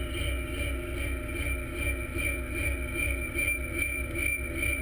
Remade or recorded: recorded